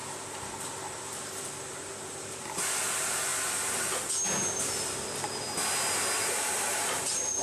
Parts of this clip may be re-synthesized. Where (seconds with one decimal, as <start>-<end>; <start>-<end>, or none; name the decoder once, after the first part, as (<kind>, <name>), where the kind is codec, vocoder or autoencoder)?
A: 1.0-3.3 (vocoder, BigVGAN v2); 6.3-7.4